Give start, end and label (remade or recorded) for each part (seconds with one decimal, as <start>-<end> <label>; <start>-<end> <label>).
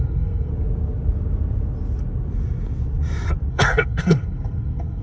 0.0-0.5 remade; 0.5-3.5 recorded; 3.5-5.0 remade